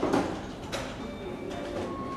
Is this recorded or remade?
recorded